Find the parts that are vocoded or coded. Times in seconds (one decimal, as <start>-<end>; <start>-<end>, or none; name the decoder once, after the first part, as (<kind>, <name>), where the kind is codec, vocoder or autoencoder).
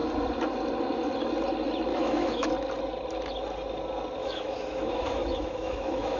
1.9-2.5 (autoencoder, DAC-VAE); 4.2-6.2